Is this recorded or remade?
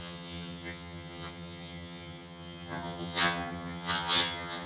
remade